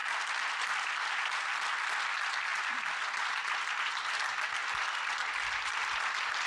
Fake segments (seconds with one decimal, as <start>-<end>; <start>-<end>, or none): none